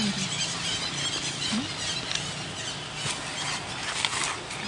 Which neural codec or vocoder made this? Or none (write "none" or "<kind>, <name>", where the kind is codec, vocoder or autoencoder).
none